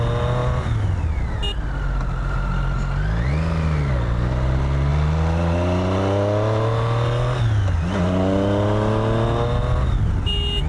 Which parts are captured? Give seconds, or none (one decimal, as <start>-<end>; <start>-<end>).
0.0-10.7